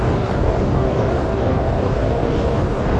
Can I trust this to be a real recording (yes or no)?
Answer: no